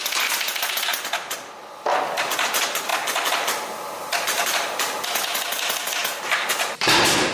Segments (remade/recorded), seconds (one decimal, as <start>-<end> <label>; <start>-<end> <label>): 0.0-7.3 recorded